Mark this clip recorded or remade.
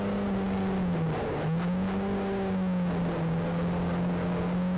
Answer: recorded